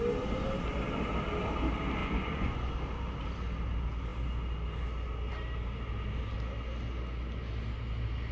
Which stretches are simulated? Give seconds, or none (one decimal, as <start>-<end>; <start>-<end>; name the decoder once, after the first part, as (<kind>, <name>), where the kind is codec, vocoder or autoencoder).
2.0-2.7 (vocoder, Vocos)